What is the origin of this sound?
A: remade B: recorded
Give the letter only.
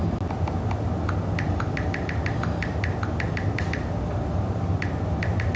B